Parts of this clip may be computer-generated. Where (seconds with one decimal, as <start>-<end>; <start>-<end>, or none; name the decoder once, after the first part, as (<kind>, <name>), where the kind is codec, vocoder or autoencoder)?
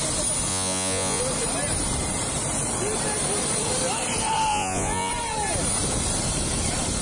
0.5-1.2 (vocoder, Vocos); 4.5-5.1